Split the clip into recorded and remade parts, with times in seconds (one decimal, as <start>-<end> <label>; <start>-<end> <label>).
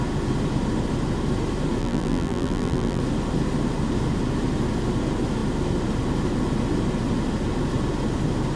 0.0-1.8 recorded; 1.8-3.0 remade; 3.0-8.6 recorded